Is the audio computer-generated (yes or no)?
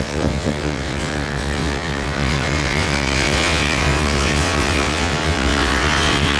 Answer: yes